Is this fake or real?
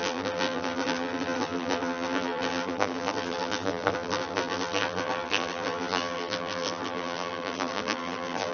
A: fake